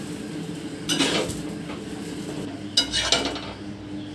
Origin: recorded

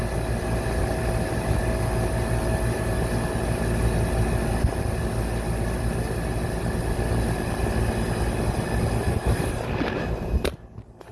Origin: recorded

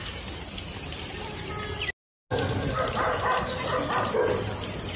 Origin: recorded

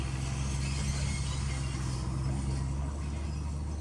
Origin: recorded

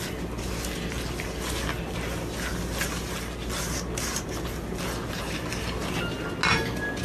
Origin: recorded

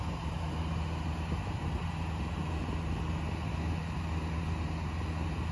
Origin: recorded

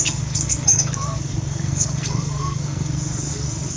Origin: remade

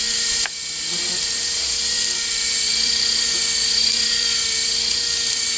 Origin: remade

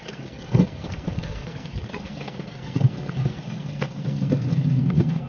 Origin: remade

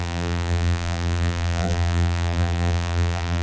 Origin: remade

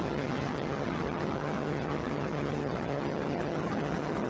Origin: remade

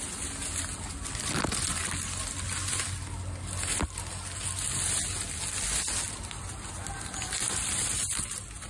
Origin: recorded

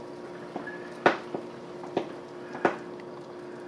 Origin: recorded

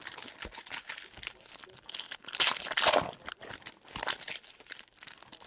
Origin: recorded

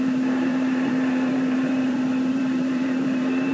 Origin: remade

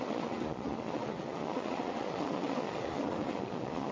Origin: remade